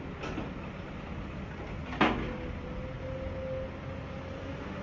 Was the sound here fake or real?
real